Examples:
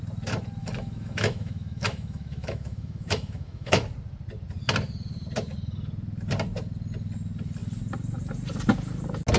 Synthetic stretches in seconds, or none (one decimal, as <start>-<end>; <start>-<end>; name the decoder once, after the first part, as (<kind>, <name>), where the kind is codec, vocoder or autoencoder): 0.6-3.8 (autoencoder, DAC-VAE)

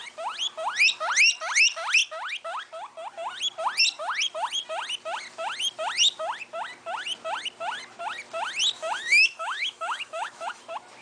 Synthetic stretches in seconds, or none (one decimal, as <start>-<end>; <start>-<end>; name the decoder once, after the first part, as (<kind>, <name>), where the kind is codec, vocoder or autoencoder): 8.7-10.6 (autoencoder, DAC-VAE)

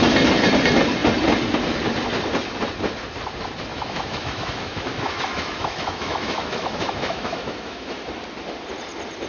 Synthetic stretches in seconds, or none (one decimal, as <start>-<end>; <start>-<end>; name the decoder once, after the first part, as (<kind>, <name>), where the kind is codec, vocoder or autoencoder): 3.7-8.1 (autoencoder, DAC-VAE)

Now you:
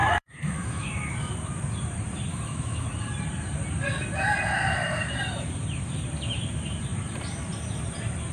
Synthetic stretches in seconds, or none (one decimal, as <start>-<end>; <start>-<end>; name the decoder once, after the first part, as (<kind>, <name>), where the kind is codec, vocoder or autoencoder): 0.0-1.1 (autoencoder, DAC-VAE); 2.3-2.9